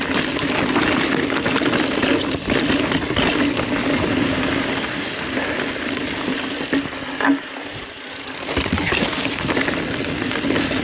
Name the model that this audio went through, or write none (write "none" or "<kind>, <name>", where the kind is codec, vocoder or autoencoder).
none